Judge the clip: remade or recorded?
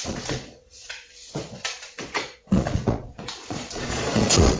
remade